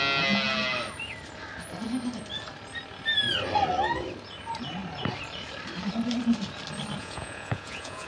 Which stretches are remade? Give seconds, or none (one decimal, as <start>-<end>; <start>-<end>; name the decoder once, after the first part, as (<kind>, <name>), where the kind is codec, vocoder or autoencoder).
7.0-8.1 (vocoder, Vocos)

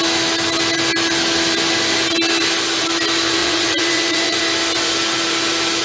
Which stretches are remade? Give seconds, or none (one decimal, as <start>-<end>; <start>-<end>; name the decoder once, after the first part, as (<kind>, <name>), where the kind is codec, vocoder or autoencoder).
3.4-4.4 (vocoder, Vocos)